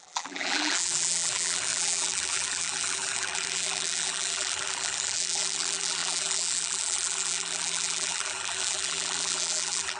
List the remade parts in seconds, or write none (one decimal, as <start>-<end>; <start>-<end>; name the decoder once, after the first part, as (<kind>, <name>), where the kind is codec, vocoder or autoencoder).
0.0-10.0 (vocoder, BigVGAN v2)